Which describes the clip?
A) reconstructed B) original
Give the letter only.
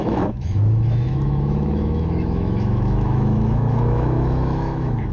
A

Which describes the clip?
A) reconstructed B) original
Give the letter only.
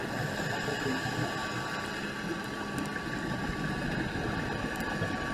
B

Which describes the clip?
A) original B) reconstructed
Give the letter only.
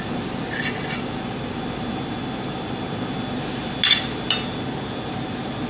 A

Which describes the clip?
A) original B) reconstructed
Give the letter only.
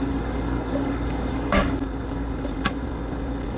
B